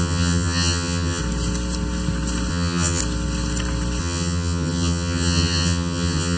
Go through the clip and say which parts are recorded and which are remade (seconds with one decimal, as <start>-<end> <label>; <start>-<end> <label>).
0.0-1.2 remade; 1.2-2.5 recorded; 2.5-3.0 remade; 3.0-4.0 recorded; 4.0-6.4 remade